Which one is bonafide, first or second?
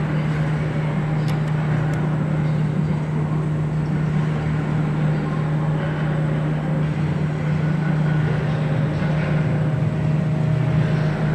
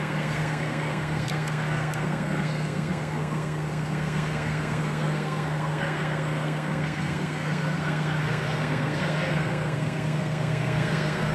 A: first